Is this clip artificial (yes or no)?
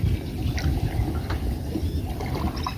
no